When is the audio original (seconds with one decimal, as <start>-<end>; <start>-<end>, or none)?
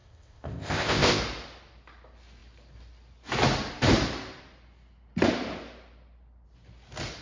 1.2-7.2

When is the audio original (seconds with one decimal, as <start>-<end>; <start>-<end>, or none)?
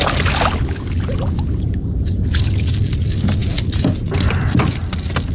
0.0-5.3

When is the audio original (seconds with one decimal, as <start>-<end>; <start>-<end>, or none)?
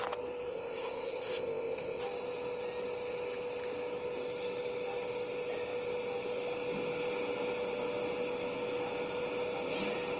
0.0-0.5; 2.0-10.2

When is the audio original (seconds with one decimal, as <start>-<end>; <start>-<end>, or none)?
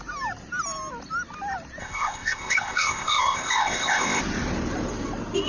0.0-1.8; 4.2-5.5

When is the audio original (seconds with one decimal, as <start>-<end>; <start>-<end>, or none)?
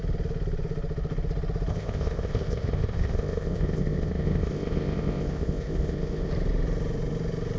0.0-1.7; 6.3-7.6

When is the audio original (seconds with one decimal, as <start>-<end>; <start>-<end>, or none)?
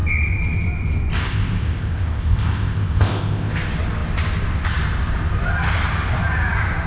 0.0-1.2; 3.5-6.9